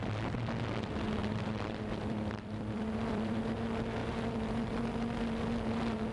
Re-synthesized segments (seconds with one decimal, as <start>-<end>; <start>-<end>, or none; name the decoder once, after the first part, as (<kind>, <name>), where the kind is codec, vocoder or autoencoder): 1.2-3.4 (vocoder, BigVGAN v2); 4.0-4.8